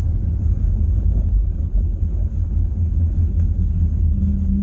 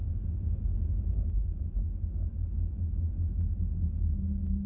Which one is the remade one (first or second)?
first